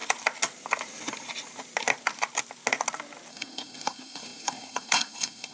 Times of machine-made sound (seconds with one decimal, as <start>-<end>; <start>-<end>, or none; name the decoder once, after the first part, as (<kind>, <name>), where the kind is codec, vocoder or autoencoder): 3.3-5.5 (codec, SNAC)